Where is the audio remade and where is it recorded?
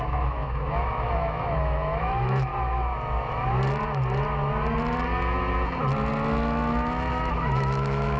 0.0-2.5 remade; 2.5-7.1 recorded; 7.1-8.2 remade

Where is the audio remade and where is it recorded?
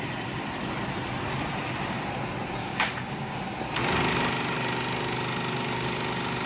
0.0-2.6 recorded; 2.6-3.4 remade; 3.4-6.5 recorded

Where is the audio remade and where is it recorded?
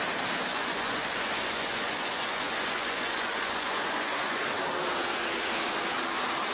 0.0-0.5 recorded; 0.5-4.4 remade; 4.4-6.5 recorded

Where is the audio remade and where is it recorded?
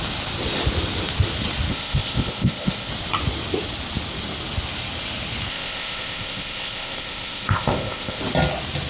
0.0-1.7 recorded; 1.7-2.9 remade; 2.9-5.5 recorded; 5.5-8.2 remade; 8.2-8.9 recorded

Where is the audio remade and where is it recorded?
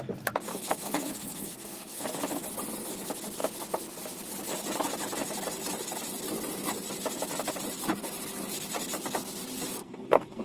0.0-0.5 recorded; 0.5-2.1 remade; 2.1-9.8 recorded; 9.8-10.4 remade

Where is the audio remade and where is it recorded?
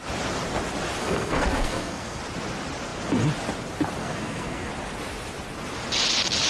0.0-1.0 recorded; 1.0-2.2 remade; 2.2-4.0 recorded; 4.0-4.7 remade; 4.7-6.5 recorded